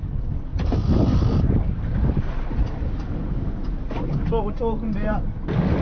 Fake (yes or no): no